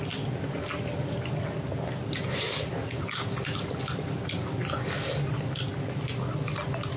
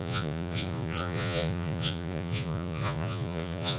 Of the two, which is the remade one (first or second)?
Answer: second